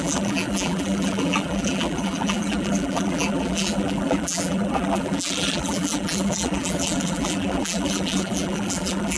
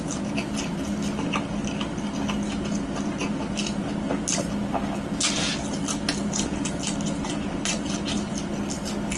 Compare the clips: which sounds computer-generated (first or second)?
first